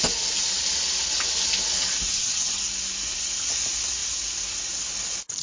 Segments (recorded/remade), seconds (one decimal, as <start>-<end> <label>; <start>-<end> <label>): 0.0-2.1 recorded; 2.1-2.6 remade; 2.6-5.4 recorded